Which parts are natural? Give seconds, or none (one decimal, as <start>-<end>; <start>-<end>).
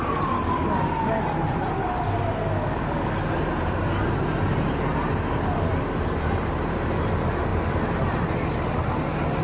0.0-9.4